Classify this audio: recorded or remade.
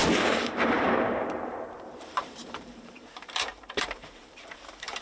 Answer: remade